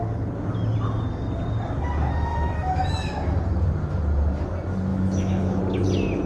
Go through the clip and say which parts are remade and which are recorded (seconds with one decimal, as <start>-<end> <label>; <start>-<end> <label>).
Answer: 0.0-2.3 recorded; 2.3-3.3 remade; 3.3-4.9 recorded; 4.9-5.6 remade; 5.6-6.3 recorded